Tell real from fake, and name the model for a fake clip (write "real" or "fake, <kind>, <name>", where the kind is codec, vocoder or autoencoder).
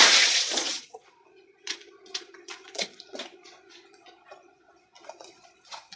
fake, vocoder, Vocos